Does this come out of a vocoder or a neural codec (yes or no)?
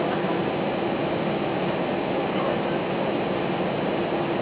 no